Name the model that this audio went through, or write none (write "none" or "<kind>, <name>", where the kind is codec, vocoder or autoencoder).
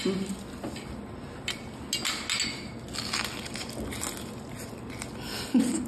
none